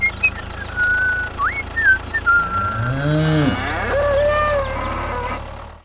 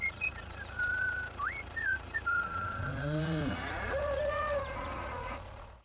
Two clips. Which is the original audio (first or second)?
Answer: first